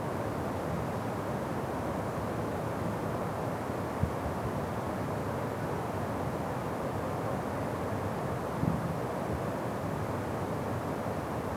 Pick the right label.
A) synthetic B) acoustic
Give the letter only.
B